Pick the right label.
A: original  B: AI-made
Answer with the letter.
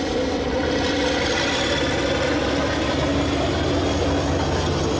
A